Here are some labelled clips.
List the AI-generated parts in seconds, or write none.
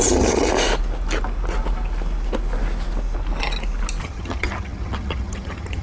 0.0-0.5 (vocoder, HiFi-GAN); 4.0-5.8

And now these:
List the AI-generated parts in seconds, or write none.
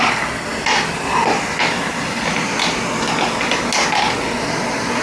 none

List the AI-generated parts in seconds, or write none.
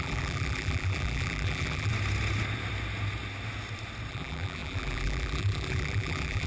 0.0-1.9 (vocoder, BigVGAN v2); 4.1-6.5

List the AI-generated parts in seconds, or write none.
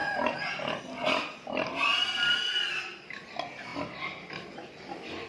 none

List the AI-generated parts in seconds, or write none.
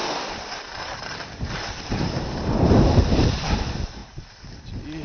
0.0-3.0 (vocoder, BigVGAN v2); 4.0-4.5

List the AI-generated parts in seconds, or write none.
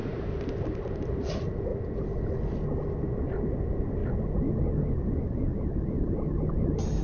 none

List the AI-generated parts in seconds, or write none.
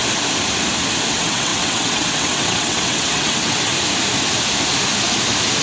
1.1-3.7 (vocoder, WaveNeXt)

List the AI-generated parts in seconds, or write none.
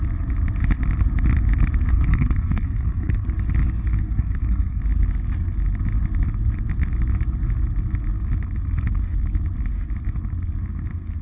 1.9-3.3 (codec, SNAC); 3.9-4.8